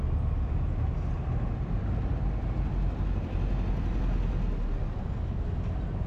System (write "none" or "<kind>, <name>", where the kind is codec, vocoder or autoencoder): none